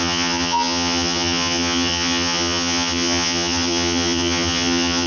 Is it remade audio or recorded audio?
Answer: remade